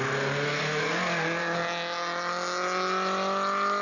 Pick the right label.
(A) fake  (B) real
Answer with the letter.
B